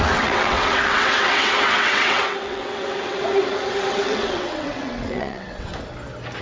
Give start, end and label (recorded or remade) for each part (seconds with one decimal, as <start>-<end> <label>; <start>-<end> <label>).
0.0-5.7 remade; 5.7-6.4 recorded